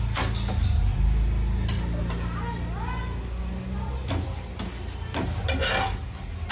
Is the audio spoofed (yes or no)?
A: no